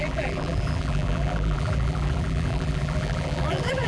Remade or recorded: remade